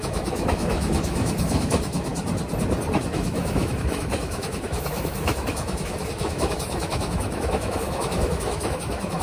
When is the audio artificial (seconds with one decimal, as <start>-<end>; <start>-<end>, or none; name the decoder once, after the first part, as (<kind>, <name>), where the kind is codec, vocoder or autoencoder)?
0.0-2.1 (autoencoder, DAC-VAE); 3.0-9.2